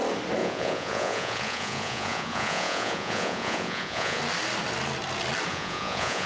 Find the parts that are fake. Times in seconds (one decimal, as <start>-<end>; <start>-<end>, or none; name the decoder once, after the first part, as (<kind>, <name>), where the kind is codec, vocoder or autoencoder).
0.4-4.2 (vocoder, Vocos); 5.5-6.3